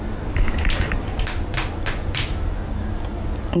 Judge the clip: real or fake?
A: real